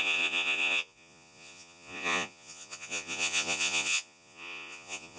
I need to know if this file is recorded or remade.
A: remade